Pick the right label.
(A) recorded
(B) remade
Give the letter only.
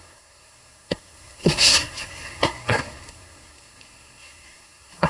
B